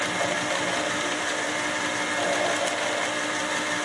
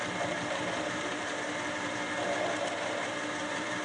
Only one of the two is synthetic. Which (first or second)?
second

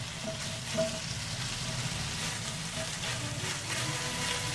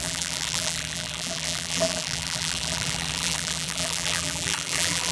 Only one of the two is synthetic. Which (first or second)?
second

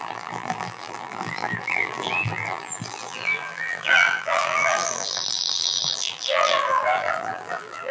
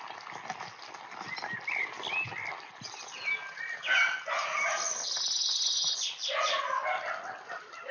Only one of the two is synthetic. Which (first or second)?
first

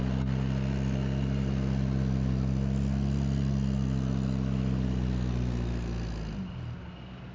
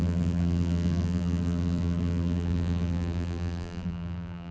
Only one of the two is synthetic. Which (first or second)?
second